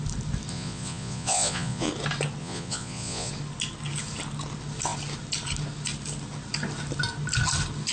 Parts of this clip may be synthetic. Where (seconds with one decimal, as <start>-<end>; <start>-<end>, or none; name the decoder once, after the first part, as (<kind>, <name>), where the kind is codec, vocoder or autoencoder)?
0.5-1.9 (vocoder, Vocos); 2.4-3.3